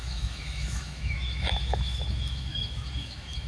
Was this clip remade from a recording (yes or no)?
yes